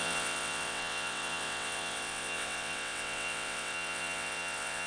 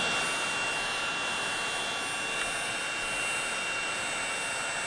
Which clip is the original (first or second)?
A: second